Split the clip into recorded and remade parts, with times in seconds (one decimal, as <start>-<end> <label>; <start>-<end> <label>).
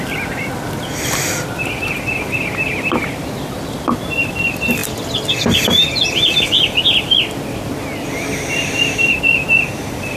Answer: 0.0-10.2 recorded